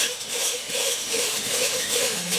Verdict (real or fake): fake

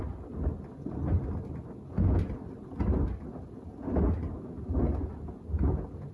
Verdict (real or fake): real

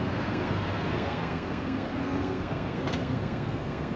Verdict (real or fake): fake